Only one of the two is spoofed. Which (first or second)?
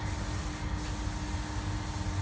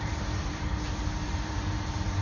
second